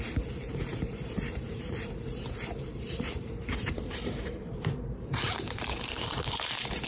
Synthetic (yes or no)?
yes